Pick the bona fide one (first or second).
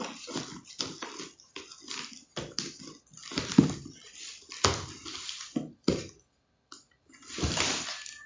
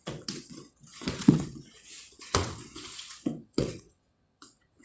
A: first